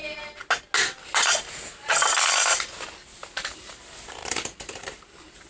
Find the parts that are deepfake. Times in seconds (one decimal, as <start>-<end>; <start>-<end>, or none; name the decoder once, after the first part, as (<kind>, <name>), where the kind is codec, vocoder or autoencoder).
3.2-3.7 (vocoder, BigVGAN v2); 4.2-5.5